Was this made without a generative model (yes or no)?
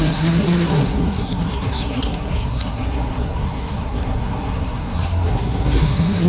no